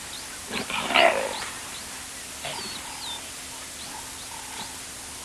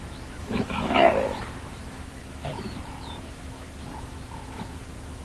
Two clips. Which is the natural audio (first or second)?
first